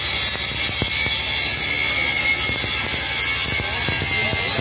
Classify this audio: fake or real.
real